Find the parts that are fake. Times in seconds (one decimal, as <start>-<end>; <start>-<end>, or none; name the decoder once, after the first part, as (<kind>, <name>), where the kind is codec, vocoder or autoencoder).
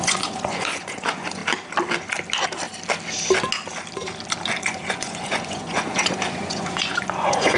0.0-1.4 (vocoder, Vocos); 4.6-7.6